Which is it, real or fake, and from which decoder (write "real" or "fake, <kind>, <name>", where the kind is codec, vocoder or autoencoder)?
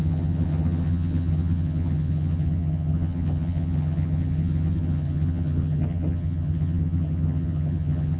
fake, vocoder, HiFi-GAN